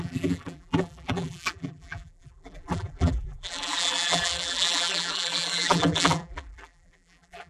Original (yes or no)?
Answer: no